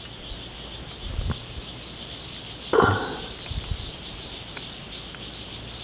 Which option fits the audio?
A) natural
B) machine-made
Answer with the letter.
A